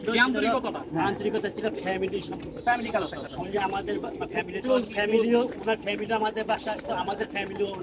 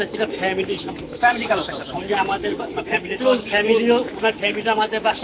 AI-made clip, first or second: second